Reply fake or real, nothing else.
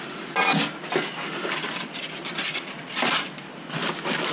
real